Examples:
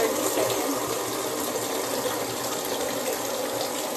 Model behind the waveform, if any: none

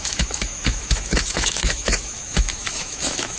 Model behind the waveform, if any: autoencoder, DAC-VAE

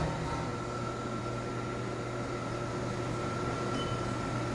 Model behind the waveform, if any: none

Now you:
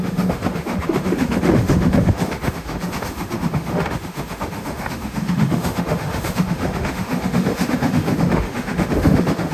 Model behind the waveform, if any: autoencoder, DAC-VAE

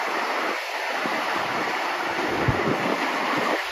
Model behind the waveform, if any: none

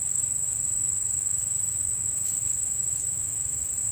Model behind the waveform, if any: autoencoder, DAC-VAE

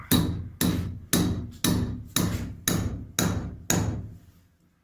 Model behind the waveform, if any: none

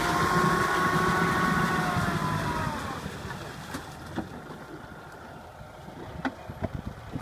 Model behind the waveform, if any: none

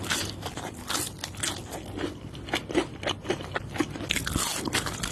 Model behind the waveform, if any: none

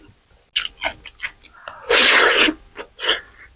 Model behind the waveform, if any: none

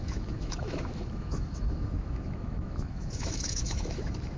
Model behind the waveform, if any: autoencoder, DAC-VAE